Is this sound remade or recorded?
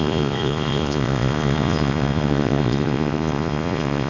remade